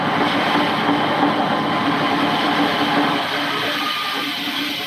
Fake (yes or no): no